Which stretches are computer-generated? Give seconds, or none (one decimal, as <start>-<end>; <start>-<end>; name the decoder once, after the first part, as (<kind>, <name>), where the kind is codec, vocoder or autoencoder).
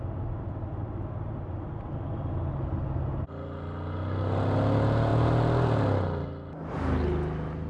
none